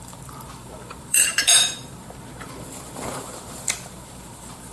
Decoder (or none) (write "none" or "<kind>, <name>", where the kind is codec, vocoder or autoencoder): vocoder, BigVGAN v2